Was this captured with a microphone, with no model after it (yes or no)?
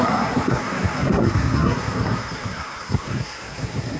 no